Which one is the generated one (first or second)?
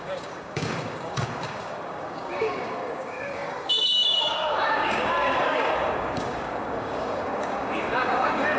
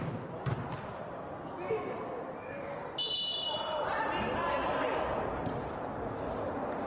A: first